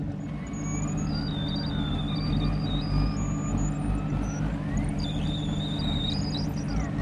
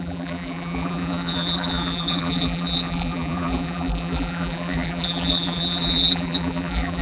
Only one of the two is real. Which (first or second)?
first